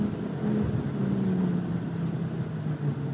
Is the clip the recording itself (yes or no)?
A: yes